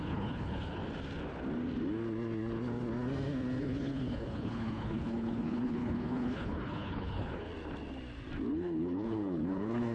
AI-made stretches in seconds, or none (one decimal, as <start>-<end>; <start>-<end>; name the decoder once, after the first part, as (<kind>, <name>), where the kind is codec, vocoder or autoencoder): 0.0-0.8 (codec, HILCodec); 3.6-7.5; 8.5-9.9